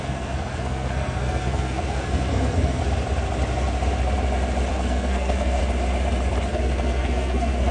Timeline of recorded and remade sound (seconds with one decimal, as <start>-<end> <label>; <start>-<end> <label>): 0.0-2.8 remade; 2.8-4.7 recorded; 4.7-5.6 remade; 5.6-6.5 recorded; 6.5-7.7 remade